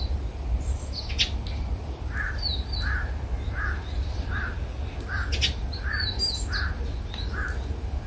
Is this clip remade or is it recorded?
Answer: recorded